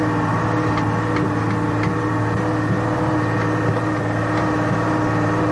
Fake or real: real